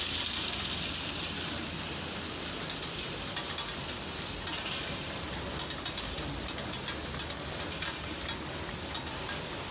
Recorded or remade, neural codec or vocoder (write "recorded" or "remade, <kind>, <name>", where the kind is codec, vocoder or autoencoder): recorded